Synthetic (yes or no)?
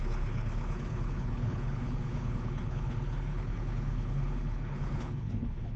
yes